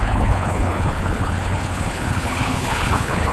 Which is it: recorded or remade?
remade